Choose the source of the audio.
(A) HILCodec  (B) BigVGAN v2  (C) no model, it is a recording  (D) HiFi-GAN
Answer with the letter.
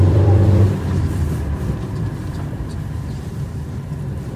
B